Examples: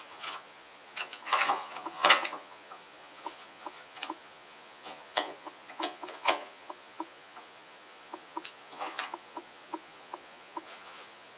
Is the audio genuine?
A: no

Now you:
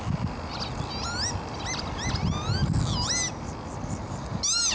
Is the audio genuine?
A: yes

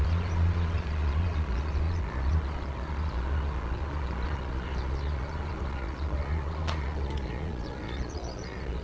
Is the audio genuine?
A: no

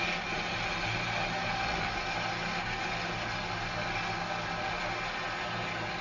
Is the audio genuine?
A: yes